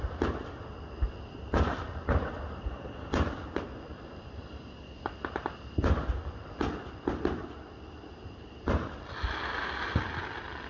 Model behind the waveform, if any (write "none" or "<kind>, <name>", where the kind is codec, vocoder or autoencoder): none